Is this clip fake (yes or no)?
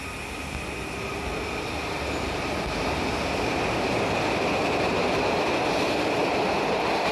no